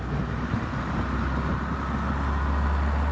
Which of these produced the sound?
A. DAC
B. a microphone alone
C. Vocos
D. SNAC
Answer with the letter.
B